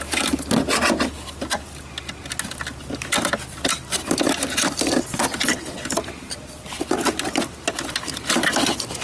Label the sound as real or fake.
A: real